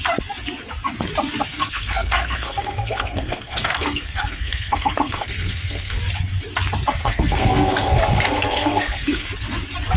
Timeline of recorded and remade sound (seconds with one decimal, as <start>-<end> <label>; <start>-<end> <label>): 0.0-1.5 recorded; 1.5-6.0 remade; 6.0-7.0 recorded; 7.0-9.3 remade; 9.3-10.0 recorded

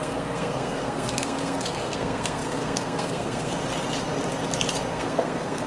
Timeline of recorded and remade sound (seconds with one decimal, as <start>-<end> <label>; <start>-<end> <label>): 0.0-3.6 remade; 3.6-4.9 recorded; 4.9-5.7 remade

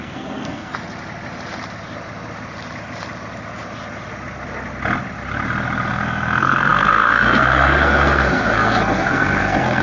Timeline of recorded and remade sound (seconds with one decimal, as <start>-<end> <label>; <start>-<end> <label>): 0.0-0.7 remade; 0.7-5.9 recorded; 5.9-9.8 remade